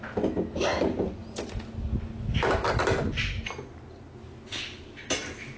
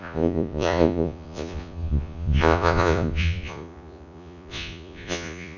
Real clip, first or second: first